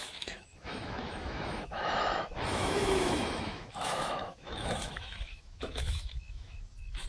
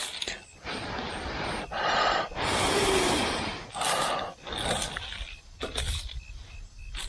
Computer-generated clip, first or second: first